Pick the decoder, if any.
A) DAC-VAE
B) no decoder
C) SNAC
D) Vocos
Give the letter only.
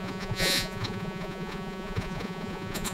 D